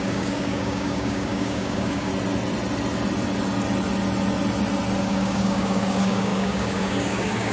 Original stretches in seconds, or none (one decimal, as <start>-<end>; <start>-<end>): 2.1-5.0